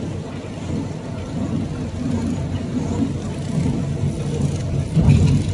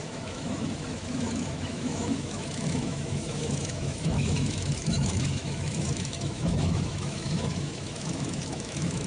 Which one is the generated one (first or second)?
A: second